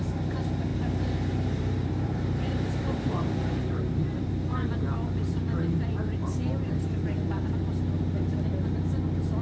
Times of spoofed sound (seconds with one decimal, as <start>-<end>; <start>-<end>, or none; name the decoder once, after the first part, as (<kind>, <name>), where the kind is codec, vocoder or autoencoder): 0.7-4.3 (vocoder, BigVGAN v2); 6.2-6.7